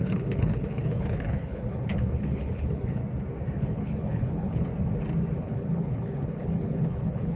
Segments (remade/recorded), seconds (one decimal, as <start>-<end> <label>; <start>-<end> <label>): 0.0-3.0 remade; 3.0-3.6 recorded; 3.6-4.7 remade; 4.7-5.4 recorded; 5.4-7.4 remade